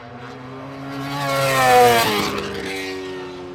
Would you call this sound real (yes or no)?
yes